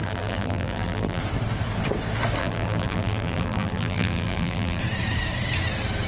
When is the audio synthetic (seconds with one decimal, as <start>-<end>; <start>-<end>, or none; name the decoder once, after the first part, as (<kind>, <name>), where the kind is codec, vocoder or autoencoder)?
0.0-1.2 (vocoder, BigVGAN v2); 2.4-4.8